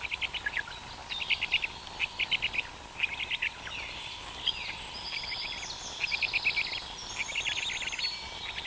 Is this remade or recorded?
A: recorded